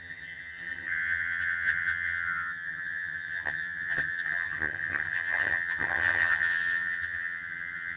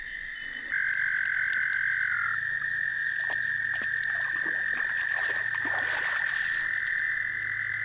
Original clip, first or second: second